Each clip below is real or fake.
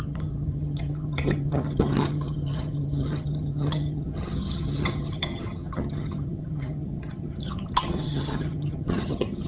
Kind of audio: fake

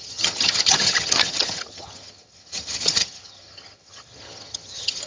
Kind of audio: fake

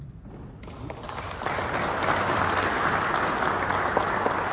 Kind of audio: real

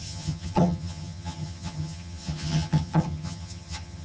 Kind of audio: fake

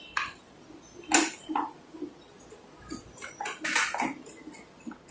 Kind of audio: real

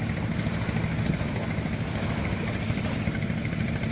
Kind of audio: real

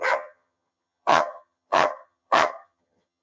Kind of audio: fake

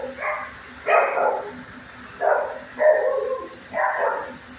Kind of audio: real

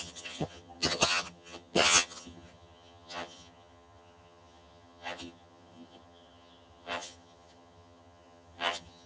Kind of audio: fake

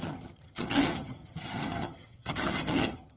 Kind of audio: fake